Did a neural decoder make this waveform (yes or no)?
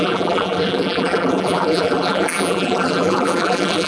yes